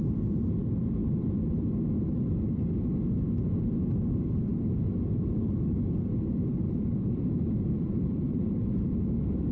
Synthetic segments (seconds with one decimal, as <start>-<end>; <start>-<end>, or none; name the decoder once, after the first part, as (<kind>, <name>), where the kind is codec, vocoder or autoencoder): 6.5-8.8 (vocoder, BigVGAN v2)